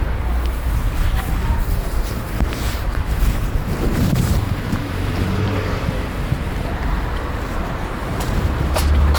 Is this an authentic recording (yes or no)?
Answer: no